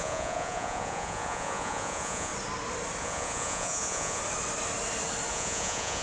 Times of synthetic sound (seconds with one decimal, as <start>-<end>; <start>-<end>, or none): 0.0-2.3; 3.0-4.2; 5.3-6.0